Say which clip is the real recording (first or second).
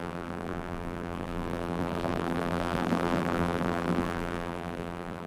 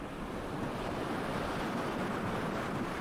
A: second